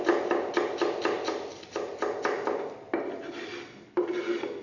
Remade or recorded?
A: recorded